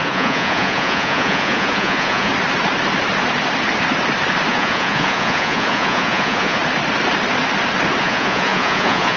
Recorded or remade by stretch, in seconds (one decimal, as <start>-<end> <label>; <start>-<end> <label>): 0.0-2.3 remade; 2.3-4.5 recorded; 4.5-6.6 remade; 6.6-8.0 recorded; 8.0-9.2 remade